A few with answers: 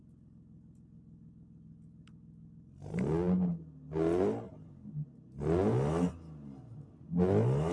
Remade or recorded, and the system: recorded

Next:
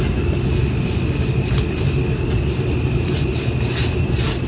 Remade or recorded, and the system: recorded